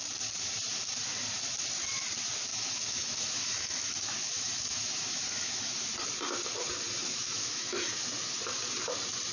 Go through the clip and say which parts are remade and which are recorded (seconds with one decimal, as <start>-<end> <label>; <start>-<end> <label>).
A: 0.0-2.5 recorded; 2.5-5.9 remade; 5.9-7.0 recorded; 7.0-7.9 remade; 7.9-9.3 recorded